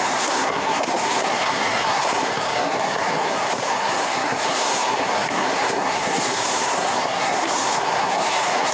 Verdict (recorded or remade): remade